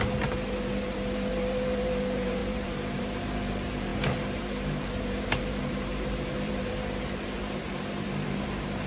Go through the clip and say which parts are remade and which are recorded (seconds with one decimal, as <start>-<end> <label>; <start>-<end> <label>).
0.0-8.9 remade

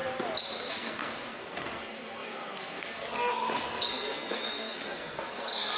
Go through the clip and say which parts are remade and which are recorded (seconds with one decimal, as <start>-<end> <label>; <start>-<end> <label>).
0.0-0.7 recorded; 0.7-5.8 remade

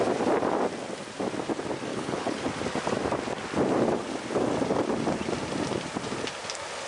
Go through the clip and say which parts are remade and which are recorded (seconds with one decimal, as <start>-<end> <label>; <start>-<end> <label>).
0.0-1.9 recorded; 1.9-2.5 remade; 2.5-6.9 recorded

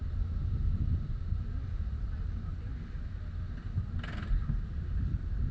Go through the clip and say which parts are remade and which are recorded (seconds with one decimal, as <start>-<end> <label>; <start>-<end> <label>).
0.0-1.3 remade; 1.3-4.3 recorded; 4.3-5.5 remade